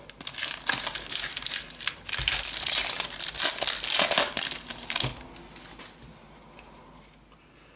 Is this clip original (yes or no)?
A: yes